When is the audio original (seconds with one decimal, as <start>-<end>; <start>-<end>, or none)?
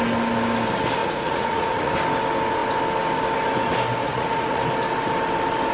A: 0.0-1.0; 1.9-4.0; 4.6-5.7